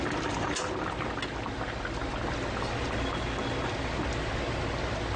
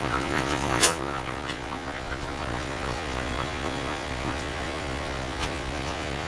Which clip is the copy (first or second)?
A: second